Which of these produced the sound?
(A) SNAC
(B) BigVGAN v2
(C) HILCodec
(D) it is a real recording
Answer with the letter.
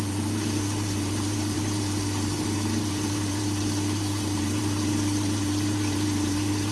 B